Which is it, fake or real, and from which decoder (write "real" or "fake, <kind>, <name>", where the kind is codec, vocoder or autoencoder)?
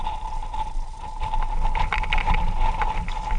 real